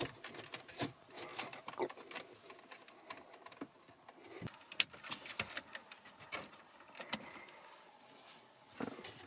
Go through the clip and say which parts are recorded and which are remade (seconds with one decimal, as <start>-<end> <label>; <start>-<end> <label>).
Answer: 0.0-9.3 recorded

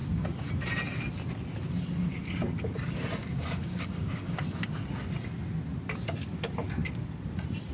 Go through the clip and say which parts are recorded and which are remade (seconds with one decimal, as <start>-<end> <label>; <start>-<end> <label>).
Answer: 0.0-0.5 remade; 0.5-3.2 recorded; 3.2-4.4 remade; 4.4-7.7 recorded

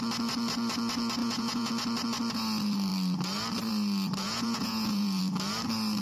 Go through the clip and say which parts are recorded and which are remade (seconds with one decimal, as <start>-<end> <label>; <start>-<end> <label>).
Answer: 0.0-1.2 recorded; 1.2-1.7 remade; 1.7-4.2 recorded; 4.2-5.2 remade; 5.2-6.0 recorded